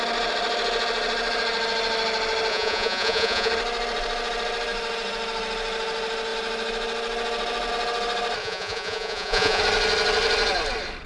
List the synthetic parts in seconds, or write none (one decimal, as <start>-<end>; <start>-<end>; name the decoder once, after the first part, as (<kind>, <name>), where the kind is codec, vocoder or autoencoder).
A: 2.5-3.5 (vocoder, Vocos); 8.4-9.6

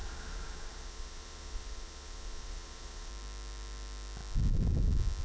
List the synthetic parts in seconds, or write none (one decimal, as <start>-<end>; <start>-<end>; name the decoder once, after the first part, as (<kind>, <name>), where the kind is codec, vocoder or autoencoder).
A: 0.0-3.1 (vocoder, Vocos)

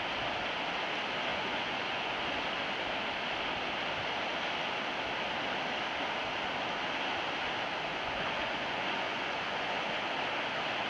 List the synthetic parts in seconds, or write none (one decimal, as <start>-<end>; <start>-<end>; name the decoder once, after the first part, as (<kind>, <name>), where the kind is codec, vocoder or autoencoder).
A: 1.3-2.2 (vocoder, Vocos); 7.9-10.0